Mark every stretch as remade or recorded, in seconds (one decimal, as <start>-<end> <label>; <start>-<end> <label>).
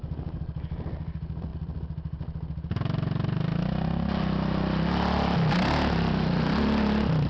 0.0-7.3 recorded